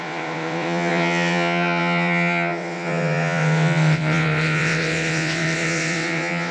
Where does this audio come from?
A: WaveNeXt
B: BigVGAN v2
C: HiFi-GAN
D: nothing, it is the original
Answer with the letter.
A